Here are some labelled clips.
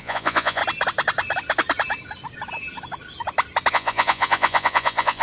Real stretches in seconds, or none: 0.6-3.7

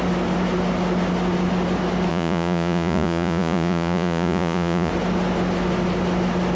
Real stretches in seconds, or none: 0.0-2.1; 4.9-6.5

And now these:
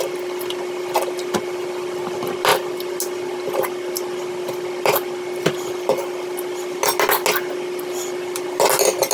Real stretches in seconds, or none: 0.0-9.1

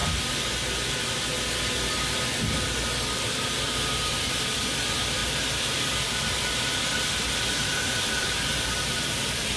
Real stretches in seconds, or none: 0.0-9.6